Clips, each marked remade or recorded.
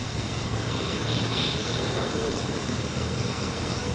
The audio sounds remade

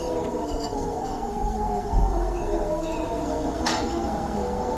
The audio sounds remade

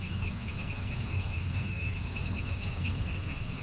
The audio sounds remade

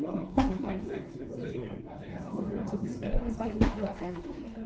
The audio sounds remade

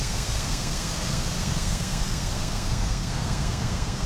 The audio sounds remade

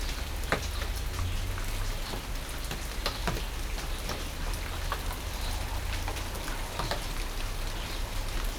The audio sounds recorded